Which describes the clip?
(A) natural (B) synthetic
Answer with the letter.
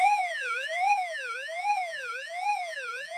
B